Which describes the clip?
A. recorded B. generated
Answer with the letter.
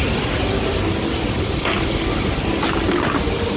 A